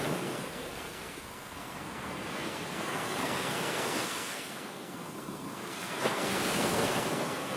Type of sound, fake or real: fake